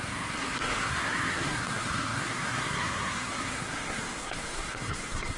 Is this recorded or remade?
remade